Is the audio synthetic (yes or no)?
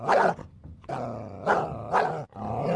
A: no